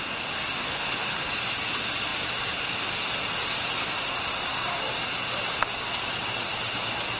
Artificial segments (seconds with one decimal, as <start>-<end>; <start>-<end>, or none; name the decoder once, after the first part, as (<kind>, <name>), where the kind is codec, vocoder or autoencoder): 0.6-1.3 (codec, HILCodec)